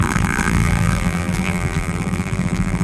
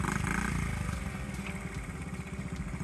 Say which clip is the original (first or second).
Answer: second